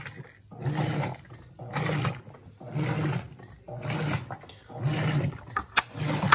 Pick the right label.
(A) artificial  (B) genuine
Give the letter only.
B